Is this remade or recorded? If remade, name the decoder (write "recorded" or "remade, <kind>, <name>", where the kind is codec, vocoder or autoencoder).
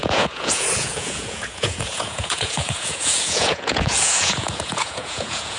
remade, vocoder, Vocos